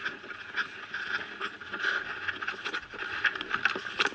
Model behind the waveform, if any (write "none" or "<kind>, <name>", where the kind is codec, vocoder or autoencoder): none